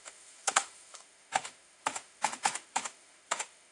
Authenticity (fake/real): fake